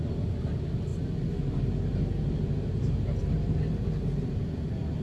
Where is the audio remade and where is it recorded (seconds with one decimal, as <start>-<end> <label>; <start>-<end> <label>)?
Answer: 0.0-5.0 recorded

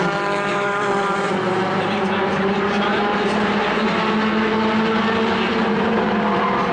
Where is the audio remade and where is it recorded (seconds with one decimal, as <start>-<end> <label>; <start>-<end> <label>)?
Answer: 0.0-0.5 recorded; 0.5-1.3 remade; 1.3-3.1 recorded; 3.1-4.1 remade; 4.1-5.5 recorded; 5.5-6.1 remade; 6.1-6.7 recorded